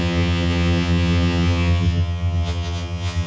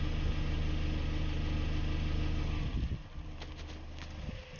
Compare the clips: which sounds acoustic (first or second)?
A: second